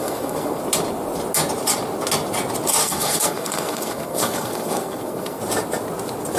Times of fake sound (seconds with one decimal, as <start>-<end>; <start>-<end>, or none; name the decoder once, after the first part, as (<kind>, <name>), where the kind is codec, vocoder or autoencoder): 0.0-0.6 (codec, SNAC); 2.8-5.4